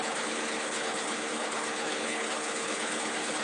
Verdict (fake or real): fake